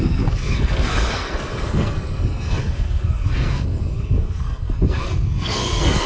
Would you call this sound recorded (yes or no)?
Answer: no